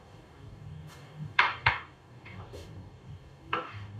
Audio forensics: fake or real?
fake